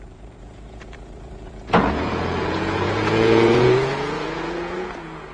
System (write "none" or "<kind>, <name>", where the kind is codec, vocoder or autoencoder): vocoder, Vocos